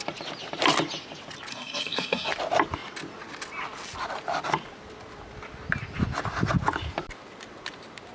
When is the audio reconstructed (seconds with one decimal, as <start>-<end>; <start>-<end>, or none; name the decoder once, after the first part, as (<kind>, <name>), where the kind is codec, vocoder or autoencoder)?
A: 1.5-2.3 (codec, SNAC)